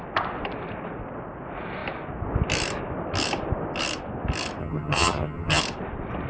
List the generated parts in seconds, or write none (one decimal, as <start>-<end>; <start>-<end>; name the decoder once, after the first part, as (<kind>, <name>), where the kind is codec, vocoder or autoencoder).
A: 4.6-5.6 (vocoder, HiFi-GAN)